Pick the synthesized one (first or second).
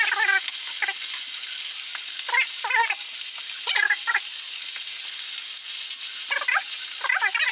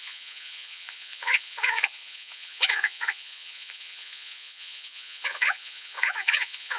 second